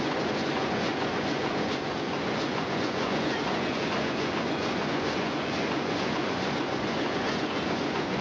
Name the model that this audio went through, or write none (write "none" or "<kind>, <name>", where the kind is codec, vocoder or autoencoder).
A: vocoder, Vocos